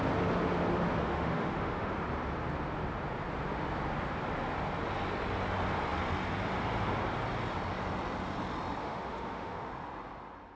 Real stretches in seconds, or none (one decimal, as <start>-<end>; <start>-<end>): 0.0-1.0; 1.9-8.8; 9.7-10.6